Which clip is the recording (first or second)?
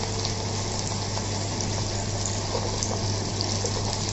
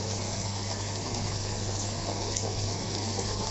first